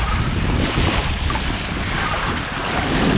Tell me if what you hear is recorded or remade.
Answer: recorded